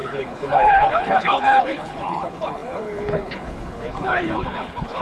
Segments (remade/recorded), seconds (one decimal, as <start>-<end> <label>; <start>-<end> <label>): 0.0-5.0 remade